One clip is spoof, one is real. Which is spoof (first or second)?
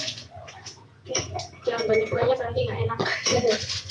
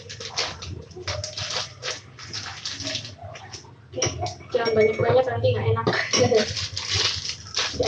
first